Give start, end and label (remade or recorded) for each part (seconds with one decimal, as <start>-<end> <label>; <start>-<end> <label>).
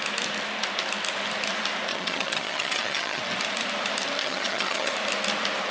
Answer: 0.0-1.9 recorded; 1.9-3.2 remade; 3.2-4.2 recorded; 4.2-4.9 remade; 4.9-5.7 recorded